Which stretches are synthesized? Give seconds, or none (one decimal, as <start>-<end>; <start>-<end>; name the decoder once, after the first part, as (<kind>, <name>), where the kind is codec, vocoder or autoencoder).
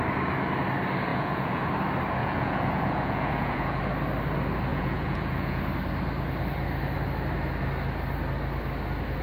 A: 1.1-1.7 (vocoder, Vocos); 2.2-3.8; 4.7-5.6